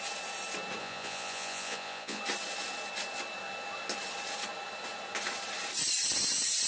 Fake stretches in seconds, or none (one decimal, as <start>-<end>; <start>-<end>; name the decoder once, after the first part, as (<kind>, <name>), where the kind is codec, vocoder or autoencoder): 0.8-2.2 (vocoder, Vocos)